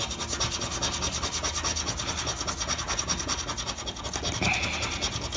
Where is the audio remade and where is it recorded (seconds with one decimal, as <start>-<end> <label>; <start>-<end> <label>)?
0.0-5.4 recorded